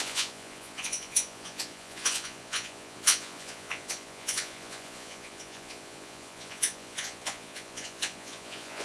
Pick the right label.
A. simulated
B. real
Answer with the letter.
A